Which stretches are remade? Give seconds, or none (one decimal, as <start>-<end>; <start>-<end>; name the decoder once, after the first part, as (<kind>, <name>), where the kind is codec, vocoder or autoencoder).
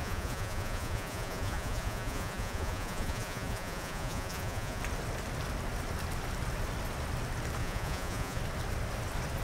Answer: 0.0-4.8 (vocoder, Vocos); 7.6-8.4